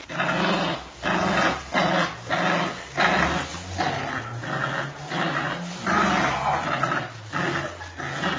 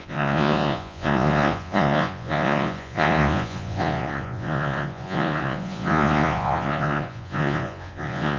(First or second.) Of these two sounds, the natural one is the first